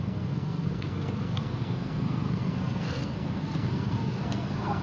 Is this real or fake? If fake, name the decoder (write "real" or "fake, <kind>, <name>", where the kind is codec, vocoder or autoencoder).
fake, codec, SNAC